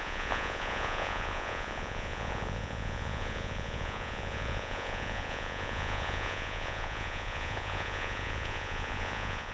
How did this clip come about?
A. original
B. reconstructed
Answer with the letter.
B